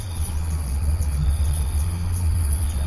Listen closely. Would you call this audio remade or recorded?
remade